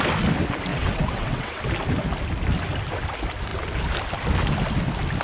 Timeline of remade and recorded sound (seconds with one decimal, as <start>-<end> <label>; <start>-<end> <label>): 0.0-0.7 recorded; 0.7-1.6 remade; 1.6-5.2 recorded